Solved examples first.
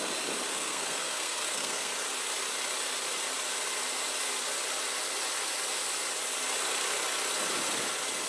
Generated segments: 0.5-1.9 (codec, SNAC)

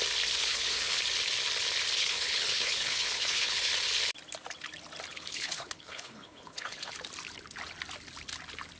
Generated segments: 0.4-1.0 (codec, HILCodec); 2.0-3.7; 5.1-6.9

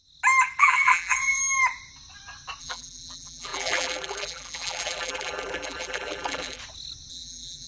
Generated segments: 0.6-1.4 (vocoder, BigVGAN v2); 2.6-6.6; 7.1-7.7

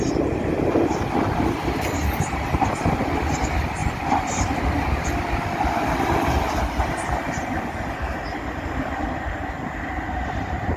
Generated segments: 2.0-3.0 (vocoder, BigVGAN v2); 3.8-4.6

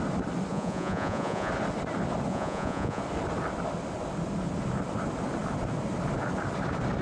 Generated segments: 0.5-1.5 (vocoder, Vocos); 2.3-3.0

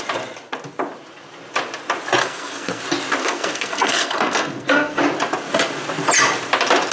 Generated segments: 2.2-2.8 (codec, SNAC); 3.2-5.0

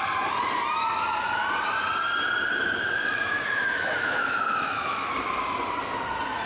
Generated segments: 2.5-5.1 (autoencoder, DAC-VAE)

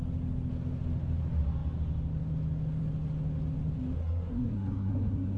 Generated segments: 4.0-5.4 (codec, SNAC)